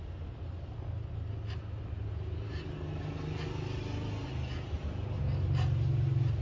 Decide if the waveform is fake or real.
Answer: real